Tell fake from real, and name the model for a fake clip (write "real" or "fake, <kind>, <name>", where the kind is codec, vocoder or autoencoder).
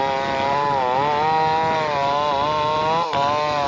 real